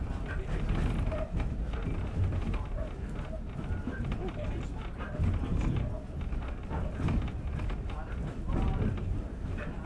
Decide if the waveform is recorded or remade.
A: recorded